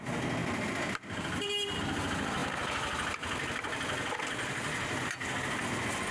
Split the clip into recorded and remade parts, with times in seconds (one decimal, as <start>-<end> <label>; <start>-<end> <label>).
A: 0.0-6.1 recorded